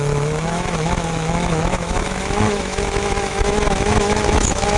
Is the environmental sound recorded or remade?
remade